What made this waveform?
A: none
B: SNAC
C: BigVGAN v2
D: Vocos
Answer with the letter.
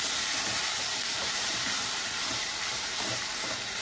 C